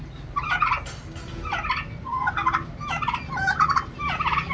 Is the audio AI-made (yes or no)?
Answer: no